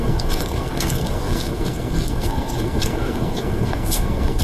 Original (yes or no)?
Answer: no